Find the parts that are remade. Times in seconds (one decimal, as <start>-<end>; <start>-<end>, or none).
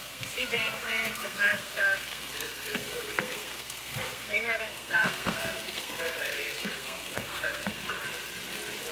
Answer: 0.0-7.8